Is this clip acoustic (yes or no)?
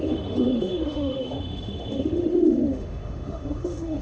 no